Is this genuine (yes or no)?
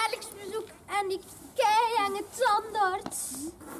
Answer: yes